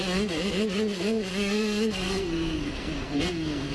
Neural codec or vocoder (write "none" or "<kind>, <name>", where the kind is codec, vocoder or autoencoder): codec, SNAC